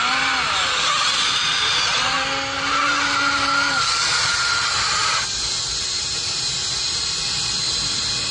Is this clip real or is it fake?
real